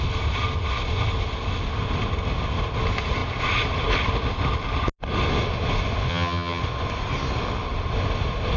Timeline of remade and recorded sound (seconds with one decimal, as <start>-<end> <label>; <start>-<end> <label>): 0.0-6.1 recorded; 6.1-6.6 remade; 6.6-8.6 recorded